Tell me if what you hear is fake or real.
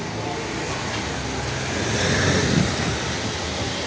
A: real